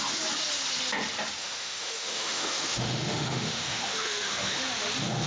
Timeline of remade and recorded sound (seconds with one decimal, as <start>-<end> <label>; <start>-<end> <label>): 0.0-1.4 recorded; 1.4-4.6 remade; 4.6-5.3 recorded